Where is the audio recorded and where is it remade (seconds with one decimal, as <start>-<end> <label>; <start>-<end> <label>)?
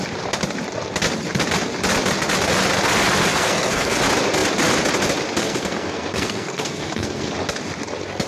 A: 0.0-3.3 recorded; 3.3-4.0 remade; 4.0-5.4 recorded; 5.4-7.3 remade; 7.3-8.3 recorded